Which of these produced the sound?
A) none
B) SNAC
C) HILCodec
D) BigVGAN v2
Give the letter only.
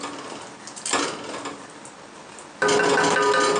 A